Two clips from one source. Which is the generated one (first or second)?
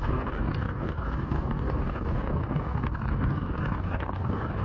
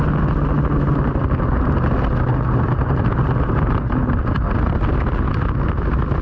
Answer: first